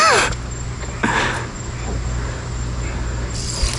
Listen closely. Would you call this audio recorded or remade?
recorded